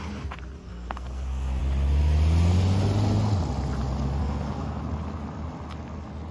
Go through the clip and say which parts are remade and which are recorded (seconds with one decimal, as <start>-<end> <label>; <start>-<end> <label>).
0.0-0.6 recorded; 0.6-1.6 remade; 1.6-4.2 recorded; 4.2-4.8 remade; 4.8-6.3 recorded